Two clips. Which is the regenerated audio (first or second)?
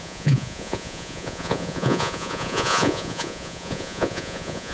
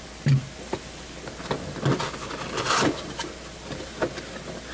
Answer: first